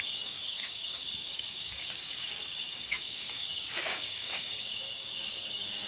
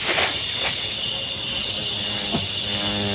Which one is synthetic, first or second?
first